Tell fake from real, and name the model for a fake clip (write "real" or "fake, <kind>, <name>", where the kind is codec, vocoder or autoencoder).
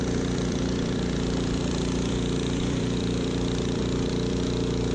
fake, vocoder, BigVGAN v2